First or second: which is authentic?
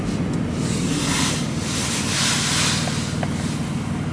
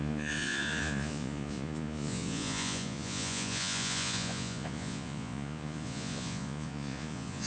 first